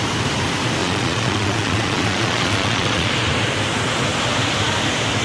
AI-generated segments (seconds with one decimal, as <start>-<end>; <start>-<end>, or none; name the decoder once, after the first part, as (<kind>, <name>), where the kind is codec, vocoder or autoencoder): 0.8-3.1 (vocoder, Vocos)